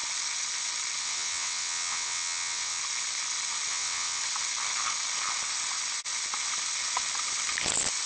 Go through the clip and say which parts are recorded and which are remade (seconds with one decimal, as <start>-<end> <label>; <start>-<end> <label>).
0.0-1.0 recorded; 1.0-2.8 remade; 2.8-3.7 recorded; 3.7-4.2 remade; 4.2-8.1 recorded